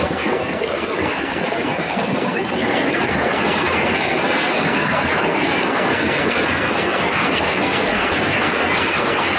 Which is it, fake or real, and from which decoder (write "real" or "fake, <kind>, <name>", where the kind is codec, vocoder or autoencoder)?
fake, codec, SNAC